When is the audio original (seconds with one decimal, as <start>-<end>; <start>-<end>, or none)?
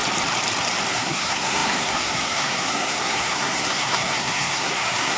0.0-0.9